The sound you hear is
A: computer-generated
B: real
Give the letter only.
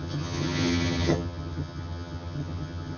A